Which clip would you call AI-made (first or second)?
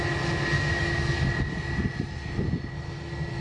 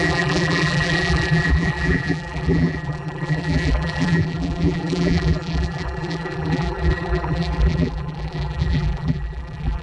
second